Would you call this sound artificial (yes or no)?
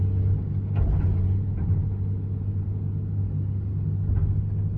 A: no